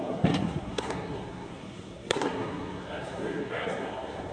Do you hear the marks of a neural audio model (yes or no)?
yes